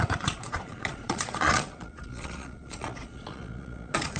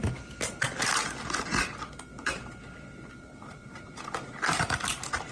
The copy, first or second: first